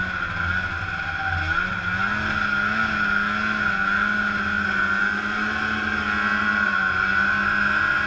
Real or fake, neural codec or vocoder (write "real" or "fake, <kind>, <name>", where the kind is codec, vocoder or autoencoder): real